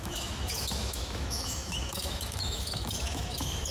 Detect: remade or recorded remade